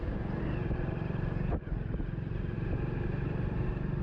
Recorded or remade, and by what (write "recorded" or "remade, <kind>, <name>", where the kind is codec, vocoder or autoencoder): recorded